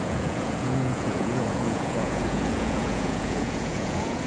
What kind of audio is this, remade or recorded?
remade